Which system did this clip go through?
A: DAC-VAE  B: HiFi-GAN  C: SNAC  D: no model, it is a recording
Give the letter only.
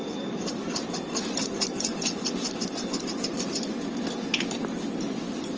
D